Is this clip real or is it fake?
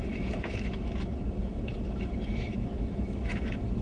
fake